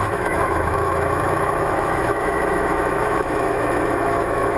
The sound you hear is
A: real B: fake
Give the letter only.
B